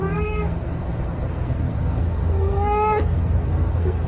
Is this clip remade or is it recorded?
remade